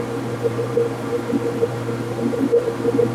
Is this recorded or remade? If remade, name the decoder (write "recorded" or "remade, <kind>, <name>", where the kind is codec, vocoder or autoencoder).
remade, vocoder, BigVGAN v2